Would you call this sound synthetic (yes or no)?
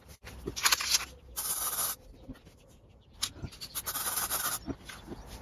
no